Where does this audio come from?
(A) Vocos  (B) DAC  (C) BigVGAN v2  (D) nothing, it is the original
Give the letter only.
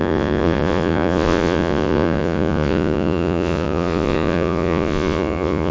A